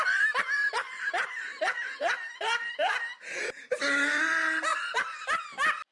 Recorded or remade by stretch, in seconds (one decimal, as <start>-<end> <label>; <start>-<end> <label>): 0.0-0.6 recorded; 0.6-2.7 remade; 2.7-4.7 recorded; 4.7-5.4 remade; 5.4-5.9 recorded